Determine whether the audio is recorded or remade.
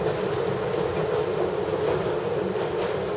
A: recorded